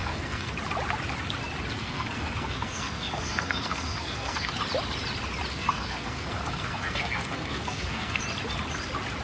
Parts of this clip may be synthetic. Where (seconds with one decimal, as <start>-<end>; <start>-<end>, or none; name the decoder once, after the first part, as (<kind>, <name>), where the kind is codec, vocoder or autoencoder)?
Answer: 0.0-0.5 (codec, SNAC); 1.8-4.5; 5.5-8.2